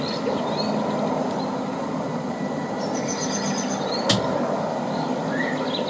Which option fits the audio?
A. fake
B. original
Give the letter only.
B